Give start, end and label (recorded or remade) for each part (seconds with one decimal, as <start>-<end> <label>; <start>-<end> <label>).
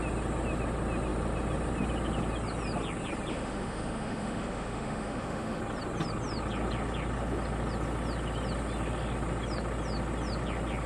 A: 0.0-3.3 recorded; 3.3-5.6 remade; 5.6-10.9 recorded